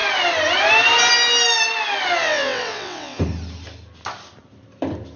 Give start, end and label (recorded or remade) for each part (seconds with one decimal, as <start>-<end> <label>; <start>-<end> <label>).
0.0-2.2 recorded; 2.2-3.2 remade; 3.2-5.2 recorded